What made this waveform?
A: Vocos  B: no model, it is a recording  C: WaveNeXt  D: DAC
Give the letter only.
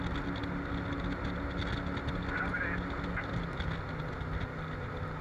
B